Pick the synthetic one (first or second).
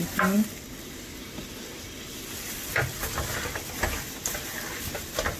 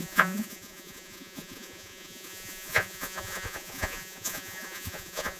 second